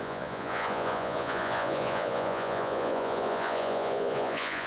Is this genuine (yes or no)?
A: no